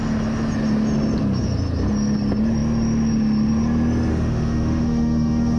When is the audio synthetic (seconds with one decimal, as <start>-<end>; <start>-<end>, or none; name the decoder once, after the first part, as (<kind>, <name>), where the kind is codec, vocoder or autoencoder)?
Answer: 4.1-5.6 (autoencoder, DAC-VAE)